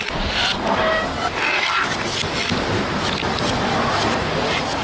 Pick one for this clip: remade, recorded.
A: recorded